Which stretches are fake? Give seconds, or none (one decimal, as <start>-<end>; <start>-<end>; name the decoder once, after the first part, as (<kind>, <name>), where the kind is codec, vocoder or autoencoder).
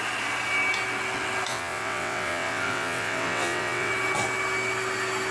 1.5-3.9 (vocoder, WaveNeXt)